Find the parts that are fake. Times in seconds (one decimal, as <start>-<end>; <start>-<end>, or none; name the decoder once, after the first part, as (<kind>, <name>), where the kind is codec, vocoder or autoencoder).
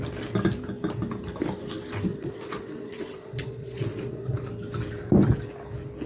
2.1-4.5 (vocoder, Vocos)